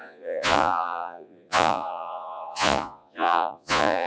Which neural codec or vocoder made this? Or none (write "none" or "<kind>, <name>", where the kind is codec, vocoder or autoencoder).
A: vocoder, Vocos